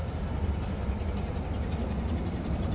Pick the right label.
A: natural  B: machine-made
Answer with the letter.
A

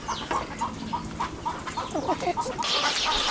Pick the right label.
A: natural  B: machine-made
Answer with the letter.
A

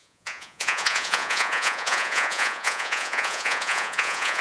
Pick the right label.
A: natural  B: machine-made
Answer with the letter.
B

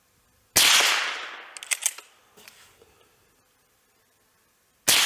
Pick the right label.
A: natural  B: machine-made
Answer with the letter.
A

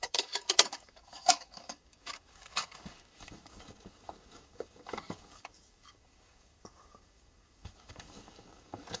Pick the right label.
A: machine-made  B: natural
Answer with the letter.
A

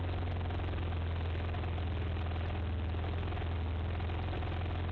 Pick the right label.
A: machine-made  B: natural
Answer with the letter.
B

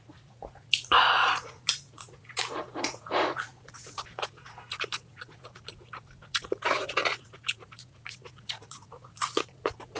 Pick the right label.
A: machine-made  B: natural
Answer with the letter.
A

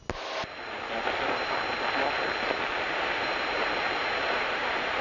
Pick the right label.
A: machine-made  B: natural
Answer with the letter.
B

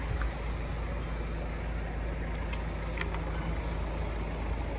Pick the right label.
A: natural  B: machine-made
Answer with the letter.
A